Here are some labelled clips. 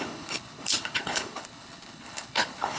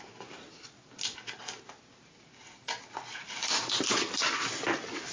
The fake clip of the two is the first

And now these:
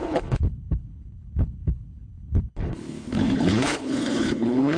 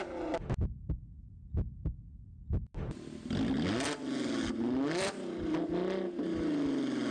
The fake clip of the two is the first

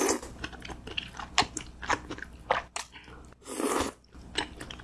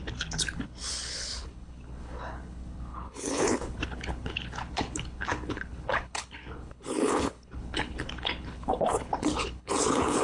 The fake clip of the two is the second